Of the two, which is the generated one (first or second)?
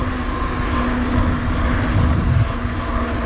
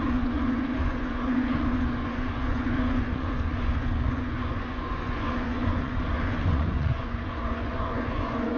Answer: second